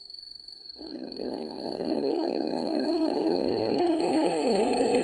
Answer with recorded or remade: remade